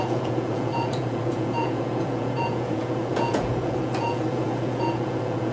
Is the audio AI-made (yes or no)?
yes